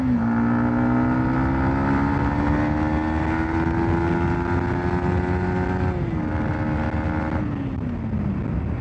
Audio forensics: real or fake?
real